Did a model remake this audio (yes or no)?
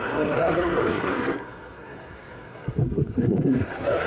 yes